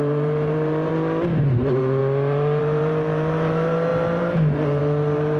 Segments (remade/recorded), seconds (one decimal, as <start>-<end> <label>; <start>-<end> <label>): 0.0-0.9 remade; 0.9-1.4 recorded; 1.4-2.0 remade; 2.0-2.6 recorded; 2.6-5.4 remade